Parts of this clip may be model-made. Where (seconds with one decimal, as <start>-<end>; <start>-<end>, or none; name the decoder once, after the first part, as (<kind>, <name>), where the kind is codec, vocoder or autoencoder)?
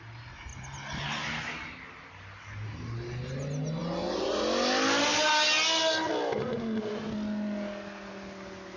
none